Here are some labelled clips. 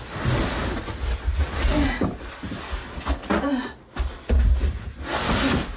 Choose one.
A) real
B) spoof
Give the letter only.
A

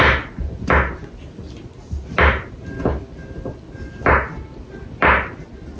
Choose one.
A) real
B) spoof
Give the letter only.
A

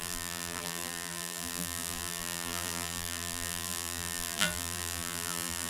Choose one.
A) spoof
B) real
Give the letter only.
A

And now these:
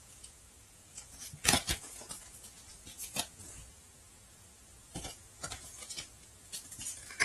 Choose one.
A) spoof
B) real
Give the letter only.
A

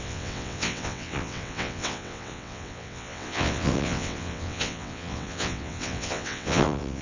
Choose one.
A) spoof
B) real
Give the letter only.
A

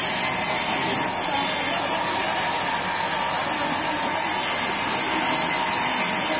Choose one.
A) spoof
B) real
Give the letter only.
B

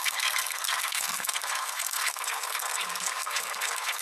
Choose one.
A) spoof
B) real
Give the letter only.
A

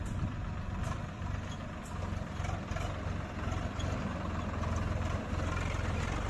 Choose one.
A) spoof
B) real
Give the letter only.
B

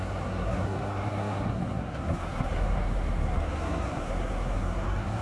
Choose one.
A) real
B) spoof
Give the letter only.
B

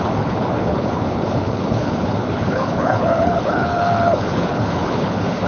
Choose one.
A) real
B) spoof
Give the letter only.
B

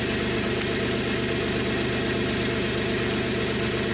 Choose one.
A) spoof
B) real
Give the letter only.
B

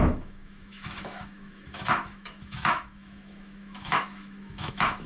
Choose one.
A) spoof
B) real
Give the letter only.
A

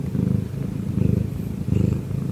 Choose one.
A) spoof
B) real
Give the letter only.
B